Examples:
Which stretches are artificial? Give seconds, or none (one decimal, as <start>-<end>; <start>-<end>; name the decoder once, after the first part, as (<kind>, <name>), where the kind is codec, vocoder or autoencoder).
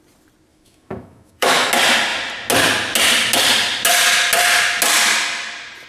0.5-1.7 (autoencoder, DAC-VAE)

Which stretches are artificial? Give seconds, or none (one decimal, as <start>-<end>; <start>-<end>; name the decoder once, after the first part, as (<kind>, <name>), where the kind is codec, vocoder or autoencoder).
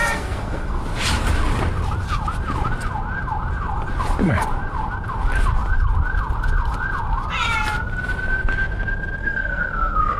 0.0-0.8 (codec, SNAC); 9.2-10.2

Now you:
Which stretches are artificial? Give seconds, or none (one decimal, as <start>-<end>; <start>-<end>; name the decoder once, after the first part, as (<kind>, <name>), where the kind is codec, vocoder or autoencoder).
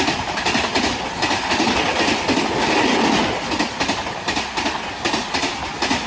none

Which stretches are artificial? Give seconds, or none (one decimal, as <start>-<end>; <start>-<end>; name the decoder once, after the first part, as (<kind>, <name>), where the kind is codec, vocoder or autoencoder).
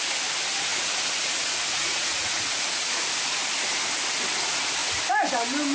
0.7-3.0 (vocoder, Vocos)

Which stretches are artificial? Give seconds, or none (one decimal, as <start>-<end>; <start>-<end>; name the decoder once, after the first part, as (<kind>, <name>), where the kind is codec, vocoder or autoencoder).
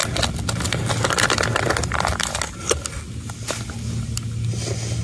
none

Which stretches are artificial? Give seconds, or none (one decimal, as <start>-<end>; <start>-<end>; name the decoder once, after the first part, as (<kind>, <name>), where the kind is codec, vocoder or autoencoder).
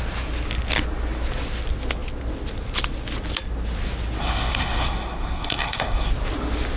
4.2-6.1 (codec, SNAC)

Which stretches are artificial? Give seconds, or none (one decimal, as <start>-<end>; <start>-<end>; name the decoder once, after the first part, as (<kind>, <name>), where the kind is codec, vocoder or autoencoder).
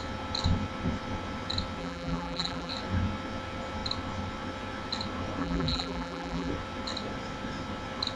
1.8-2.7 (vocoder, BigVGAN v2); 5.4-6.5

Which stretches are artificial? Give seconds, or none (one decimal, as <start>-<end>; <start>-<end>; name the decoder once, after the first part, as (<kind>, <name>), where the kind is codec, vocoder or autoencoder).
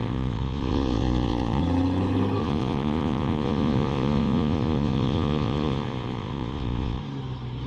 0.0-1.6 (vocoder, Vocos); 2.4-7.0